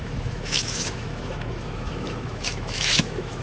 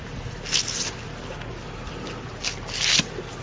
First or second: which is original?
second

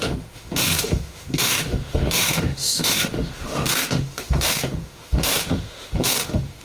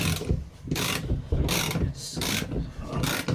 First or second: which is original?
second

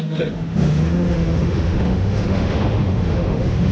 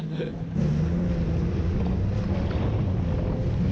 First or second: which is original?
second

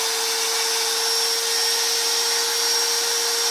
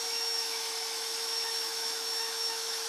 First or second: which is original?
first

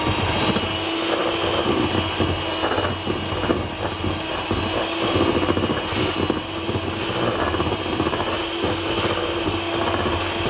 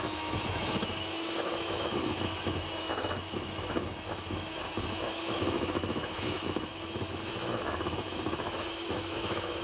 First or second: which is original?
first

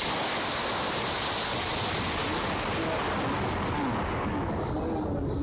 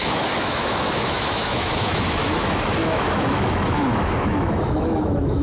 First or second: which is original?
first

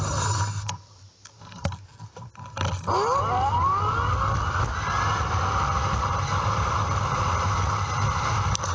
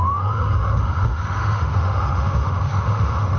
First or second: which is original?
first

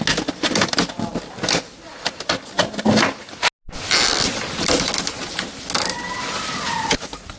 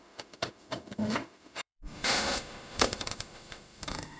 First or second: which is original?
first